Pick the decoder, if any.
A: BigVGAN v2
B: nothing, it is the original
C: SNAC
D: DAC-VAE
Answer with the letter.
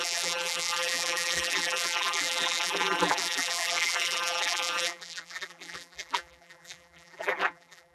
A